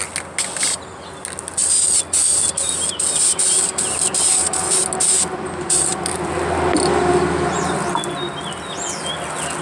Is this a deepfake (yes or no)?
no